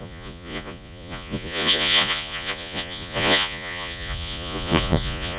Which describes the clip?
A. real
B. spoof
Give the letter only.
B